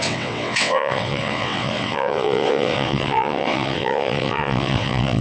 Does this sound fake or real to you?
fake